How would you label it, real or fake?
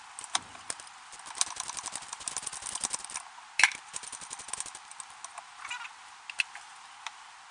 real